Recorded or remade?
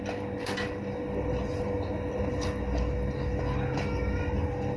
recorded